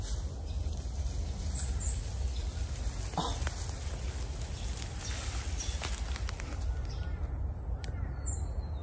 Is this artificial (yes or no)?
no